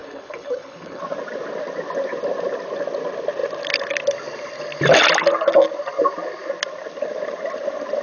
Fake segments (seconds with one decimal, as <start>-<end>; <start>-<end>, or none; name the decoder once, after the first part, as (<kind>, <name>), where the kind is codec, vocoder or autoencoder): 0.0-1.0 (codec, HILCodec)